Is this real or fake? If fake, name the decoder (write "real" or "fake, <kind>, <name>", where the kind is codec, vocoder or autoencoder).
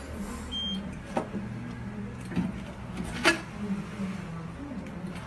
real